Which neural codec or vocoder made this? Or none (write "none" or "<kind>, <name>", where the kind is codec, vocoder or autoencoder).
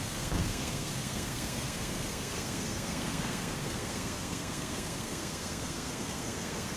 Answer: codec, SNAC